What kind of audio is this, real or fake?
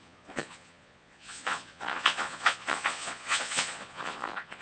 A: fake